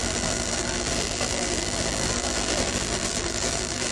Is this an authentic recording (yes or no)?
no